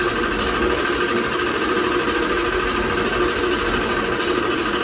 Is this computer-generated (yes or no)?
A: no